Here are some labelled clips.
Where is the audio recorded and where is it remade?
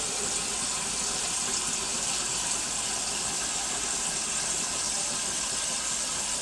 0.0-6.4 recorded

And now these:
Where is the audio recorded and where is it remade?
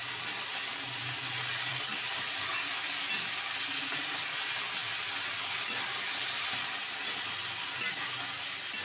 0.0-8.8 recorded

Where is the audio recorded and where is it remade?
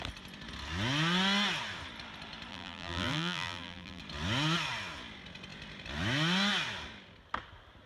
0.0-2.5 recorded; 2.5-4.0 remade; 4.0-7.9 recorded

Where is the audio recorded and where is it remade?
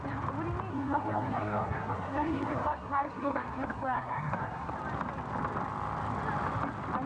0.0-0.7 recorded; 0.7-4.7 remade; 4.7-7.1 recorded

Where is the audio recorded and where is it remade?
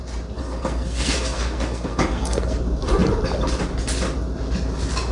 0.0-0.4 recorded; 0.4-2.6 remade; 2.6-5.1 recorded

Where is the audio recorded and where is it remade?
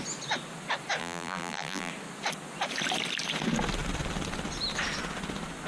0.0-1.0 recorded; 1.0-1.9 remade; 1.9-5.7 recorded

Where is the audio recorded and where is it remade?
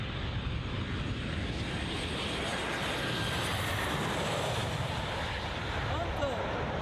0.0-6.8 recorded